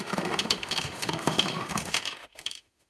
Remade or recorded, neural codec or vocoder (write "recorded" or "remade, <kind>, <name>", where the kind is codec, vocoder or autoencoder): remade, autoencoder, DAC-VAE